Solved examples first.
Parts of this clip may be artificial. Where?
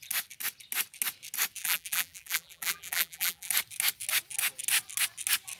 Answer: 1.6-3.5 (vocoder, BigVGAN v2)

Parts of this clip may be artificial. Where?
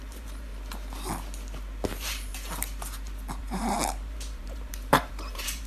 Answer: 0.0-0.5 (vocoder, BigVGAN v2); 1.9-2.3; 3.4-5.7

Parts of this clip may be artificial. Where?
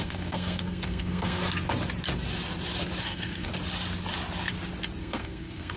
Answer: 0.0-1.4 (codec, SNAC); 3.0-3.5; 5.0-5.8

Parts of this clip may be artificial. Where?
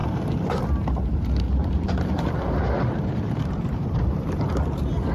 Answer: 0.0-0.6 (vocoder, BigVGAN v2); 1.6-4.5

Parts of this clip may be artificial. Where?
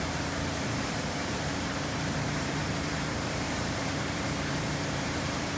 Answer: 0.0-5.6 (vocoder, BigVGAN v2)